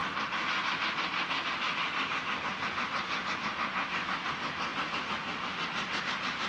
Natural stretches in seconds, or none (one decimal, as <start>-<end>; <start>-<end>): 0.0-1.3